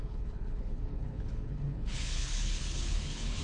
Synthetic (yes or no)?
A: yes